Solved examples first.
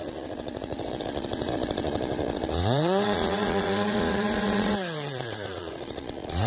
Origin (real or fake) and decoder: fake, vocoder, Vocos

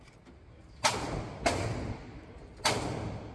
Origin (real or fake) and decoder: real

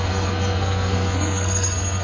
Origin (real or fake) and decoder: fake, codec, SNAC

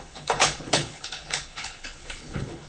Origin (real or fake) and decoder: fake, codec, HILCodec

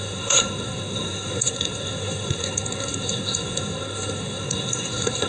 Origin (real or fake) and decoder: fake, codec, SNAC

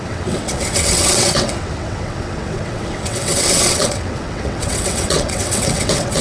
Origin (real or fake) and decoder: fake, vocoder, WaveNeXt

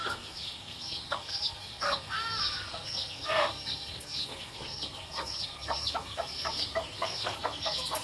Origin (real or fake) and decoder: fake, codec, SNAC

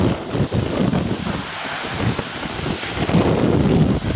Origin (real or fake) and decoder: real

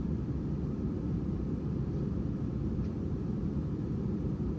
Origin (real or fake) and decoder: fake, vocoder, BigVGAN v2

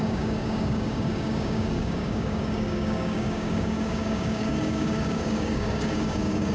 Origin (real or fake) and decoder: fake, codec, DAC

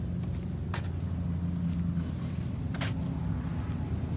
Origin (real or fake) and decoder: real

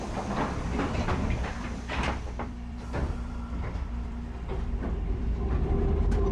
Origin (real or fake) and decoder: fake, vocoder, BigVGAN v2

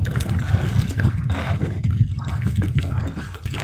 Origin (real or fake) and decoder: fake, codec, SNAC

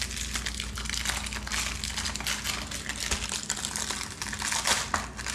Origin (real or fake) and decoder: real